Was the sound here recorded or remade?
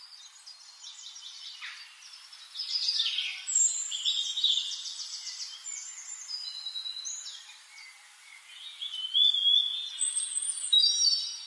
recorded